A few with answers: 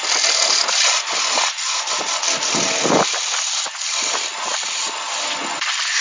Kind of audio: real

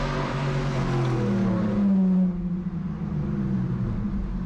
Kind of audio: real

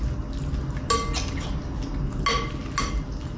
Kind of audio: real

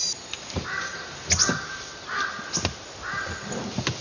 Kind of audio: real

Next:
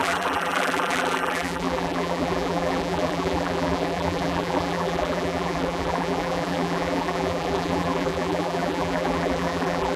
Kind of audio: fake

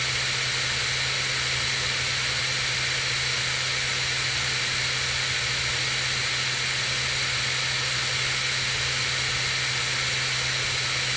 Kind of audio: real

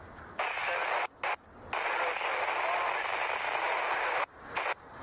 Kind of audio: real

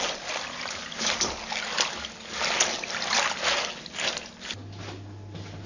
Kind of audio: real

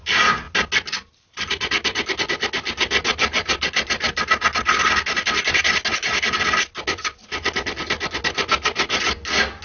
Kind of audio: real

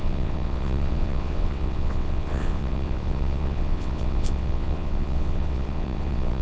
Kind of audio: fake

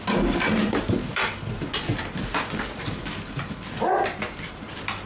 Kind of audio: fake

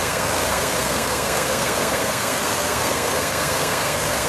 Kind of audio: fake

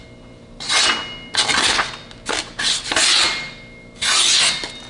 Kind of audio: real